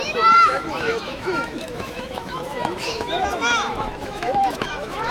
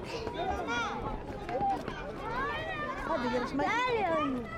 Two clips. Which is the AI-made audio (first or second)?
first